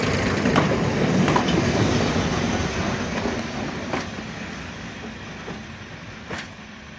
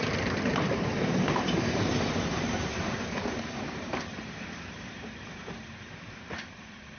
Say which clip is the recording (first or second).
first